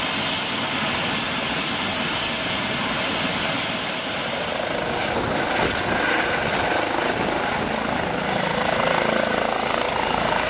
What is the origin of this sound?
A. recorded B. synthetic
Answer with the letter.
A